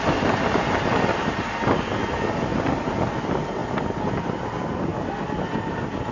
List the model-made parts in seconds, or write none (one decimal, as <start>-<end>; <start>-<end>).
none